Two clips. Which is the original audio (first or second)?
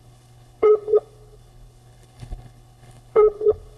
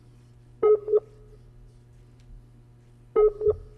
second